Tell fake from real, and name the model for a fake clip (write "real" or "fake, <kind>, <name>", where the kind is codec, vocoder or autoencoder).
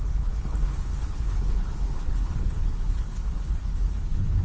fake, codec, HILCodec